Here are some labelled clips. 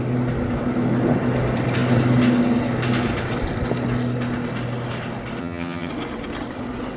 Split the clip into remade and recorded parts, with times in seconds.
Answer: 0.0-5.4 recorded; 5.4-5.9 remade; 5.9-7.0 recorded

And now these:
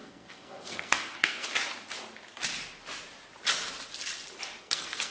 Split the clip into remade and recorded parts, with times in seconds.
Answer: 0.0-1.5 remade; 1.5-4.6 recorded; 4.6-5.1 remade

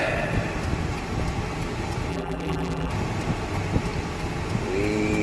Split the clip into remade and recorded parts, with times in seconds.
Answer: 0.0-2.1 recorded; 2.1-2.9 remade; 2.9-5.2 recorded

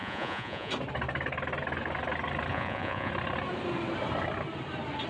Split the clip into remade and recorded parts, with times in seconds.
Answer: 0.0-0.7 remade; 0.7-2.5 recorded; 2.5-3.1 remade; 3.1-5.1 recorded

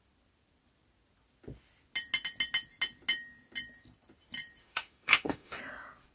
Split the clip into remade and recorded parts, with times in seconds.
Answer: 0.0-4.6 recorded; 4.6-5.6 remade; 5.6-6.1 recorded

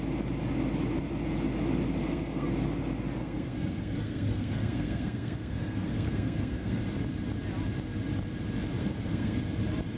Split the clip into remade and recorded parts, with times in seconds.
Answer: 0.0-2.0 recorded; 2.0-2.5 remade; 2.5-3.2 recorded; 3.2-6.8 remade; 6.8-8.8 recorded; 8.8-9.4 remade; 9.4-10.0 recorded